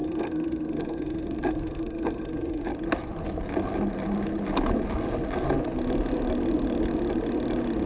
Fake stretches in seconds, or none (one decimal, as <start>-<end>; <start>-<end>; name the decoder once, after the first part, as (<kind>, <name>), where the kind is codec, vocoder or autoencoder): 0.0-2.7 (codec, SNAC)